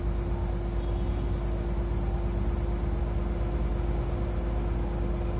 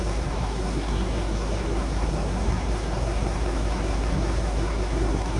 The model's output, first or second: second